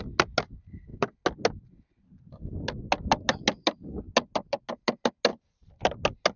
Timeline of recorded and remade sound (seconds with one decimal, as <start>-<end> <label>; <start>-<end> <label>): 0.0-6.4 recorded